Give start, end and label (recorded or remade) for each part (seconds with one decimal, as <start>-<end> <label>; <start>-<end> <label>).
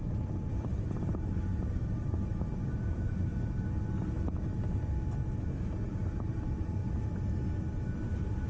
0.0-3.3 remade; 3.3-5.9 recorded; 5.9-6.8 remade; 6.8-8.5 recorded